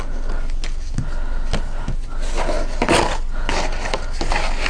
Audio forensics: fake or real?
real